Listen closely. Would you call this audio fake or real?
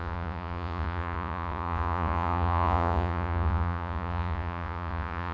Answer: fake